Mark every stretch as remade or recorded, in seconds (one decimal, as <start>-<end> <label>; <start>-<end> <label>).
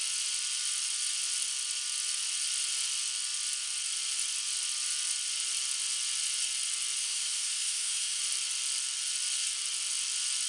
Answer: 0.0-7.0 recorded; 7.0-8.2 remade; 8.2-10.5 recorded